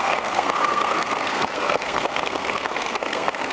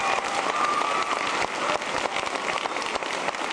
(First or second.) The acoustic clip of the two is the second